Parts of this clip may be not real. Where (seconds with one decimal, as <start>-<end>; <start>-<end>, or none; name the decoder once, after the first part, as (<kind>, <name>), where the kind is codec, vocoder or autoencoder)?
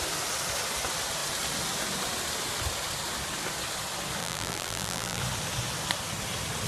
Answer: 4.2-5.2 (vocoder, BigVGAN v2)